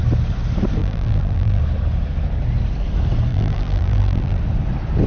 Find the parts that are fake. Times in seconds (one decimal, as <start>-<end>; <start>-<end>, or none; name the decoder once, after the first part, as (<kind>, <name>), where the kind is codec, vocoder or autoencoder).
0.8-1.6 (vocoder, BigVGAN v2); 3.3-4.4